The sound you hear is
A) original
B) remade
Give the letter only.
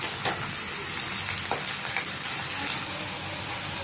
A